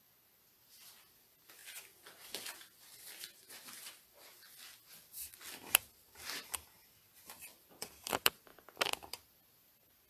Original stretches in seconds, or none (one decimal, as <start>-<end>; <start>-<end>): 0.0-10.1